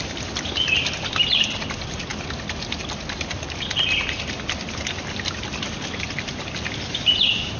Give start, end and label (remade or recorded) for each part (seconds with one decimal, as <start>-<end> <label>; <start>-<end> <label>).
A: 0.0-7.6 recorded